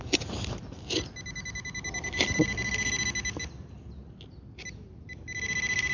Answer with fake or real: real